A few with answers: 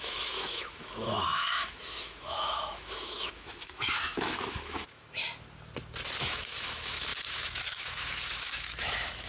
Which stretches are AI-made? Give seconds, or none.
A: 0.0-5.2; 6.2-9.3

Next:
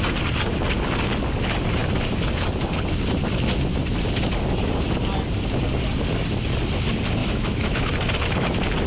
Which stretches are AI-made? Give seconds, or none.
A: 7.2-7.9

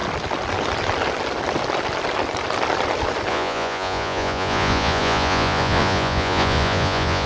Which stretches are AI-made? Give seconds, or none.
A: 3.3-7.3

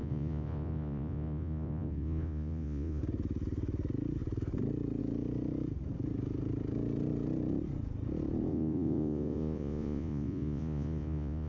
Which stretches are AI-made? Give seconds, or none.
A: 0.0-3.0; 8.5-11.5

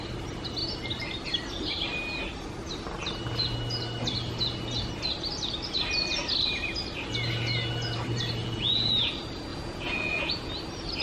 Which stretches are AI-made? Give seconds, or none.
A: 8.4-9.1; 9.5-10.5

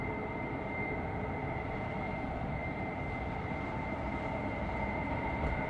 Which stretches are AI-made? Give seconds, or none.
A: 0.0-5.7